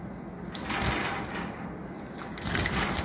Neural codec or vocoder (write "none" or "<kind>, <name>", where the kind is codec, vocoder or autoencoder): none